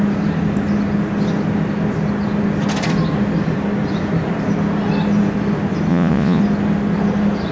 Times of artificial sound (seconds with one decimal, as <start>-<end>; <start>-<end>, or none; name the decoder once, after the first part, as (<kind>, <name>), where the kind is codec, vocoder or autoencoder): 5.9-6.4 (vocoder, Vocos)